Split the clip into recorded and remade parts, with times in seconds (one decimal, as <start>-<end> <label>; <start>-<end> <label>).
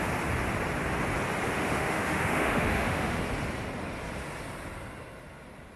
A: 0.0-1.5 recorded; 1.5-3.2 remade; 3.2-5.8 recorded